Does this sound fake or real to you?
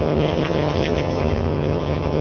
fake